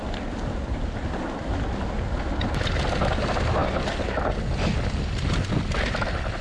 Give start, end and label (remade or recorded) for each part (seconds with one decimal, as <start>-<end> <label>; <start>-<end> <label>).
0.0-6.4 recorded